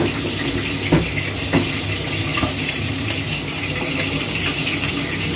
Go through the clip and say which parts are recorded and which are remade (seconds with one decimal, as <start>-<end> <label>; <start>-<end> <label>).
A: 0.0-2.3 recorded; 2.3-4.9 remade; 4.9-5.4 recorded